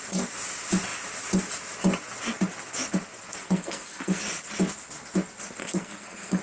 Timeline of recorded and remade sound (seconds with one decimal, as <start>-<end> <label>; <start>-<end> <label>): 0.0-3.4 recorded; 3.4-4.2 remade; 4.2-5.6 recorded; 5.6-6.4 remade